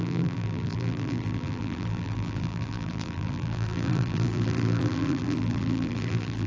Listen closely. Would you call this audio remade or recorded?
remade